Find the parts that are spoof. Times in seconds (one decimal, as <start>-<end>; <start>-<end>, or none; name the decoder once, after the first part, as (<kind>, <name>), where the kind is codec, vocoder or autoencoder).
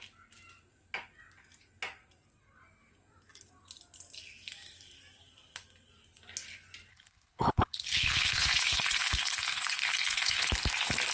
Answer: 6.9-10.5 (codec, HILCodec)